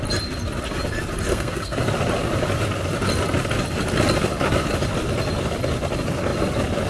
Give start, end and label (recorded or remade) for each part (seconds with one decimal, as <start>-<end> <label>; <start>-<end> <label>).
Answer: 0.0-1.3 recorded; 1.3-1.8 remade; 1.8-6.9 recorded